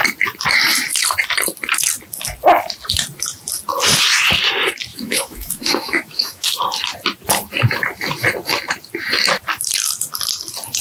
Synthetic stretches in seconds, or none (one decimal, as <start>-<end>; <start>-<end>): 4.9-6.6